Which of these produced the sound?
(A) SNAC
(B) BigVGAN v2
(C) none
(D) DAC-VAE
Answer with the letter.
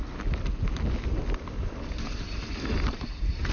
C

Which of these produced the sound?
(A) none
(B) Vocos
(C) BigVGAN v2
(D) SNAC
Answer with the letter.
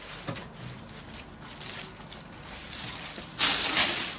A